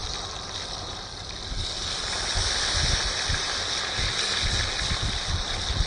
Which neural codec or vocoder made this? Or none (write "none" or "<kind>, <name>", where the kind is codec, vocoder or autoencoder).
none